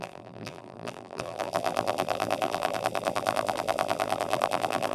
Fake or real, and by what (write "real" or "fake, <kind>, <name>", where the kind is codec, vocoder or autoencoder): fake, vocoder, BigVGAN v2